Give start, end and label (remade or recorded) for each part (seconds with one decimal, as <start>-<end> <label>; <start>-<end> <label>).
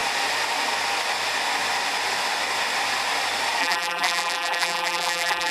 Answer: 0.0-3.6 recorded; 3.6-5.5 remade